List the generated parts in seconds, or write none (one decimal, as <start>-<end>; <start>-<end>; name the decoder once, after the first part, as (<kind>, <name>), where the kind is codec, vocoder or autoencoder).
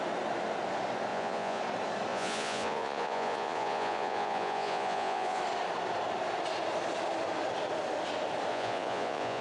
1.1-1.6 (vocoder, Vocos); 2.1-5.4; 8.5-9.4